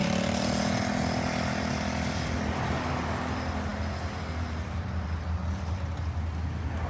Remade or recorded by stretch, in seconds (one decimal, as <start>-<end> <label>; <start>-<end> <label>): 0.0-6.9 recorded